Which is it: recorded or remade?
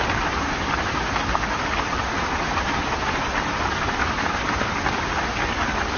recorded